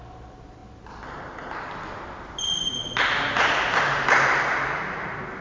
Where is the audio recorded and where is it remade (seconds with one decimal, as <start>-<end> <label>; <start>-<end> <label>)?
0.0-5.4 recorded